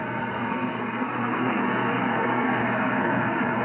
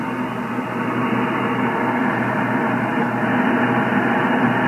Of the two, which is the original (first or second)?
second